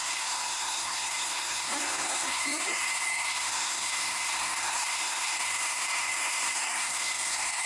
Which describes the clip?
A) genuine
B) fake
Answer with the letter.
B